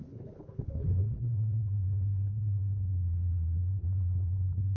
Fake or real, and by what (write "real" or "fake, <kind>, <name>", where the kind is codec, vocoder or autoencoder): fake, codec, HILCodec